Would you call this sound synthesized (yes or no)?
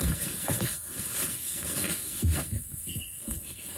yes